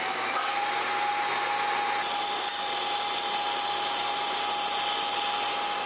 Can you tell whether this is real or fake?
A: fake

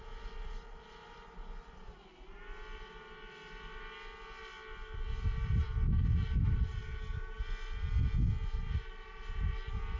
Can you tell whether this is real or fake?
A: real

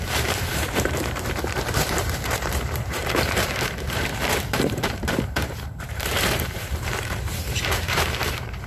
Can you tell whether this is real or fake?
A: fake